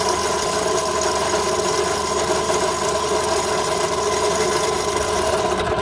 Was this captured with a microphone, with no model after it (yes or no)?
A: yes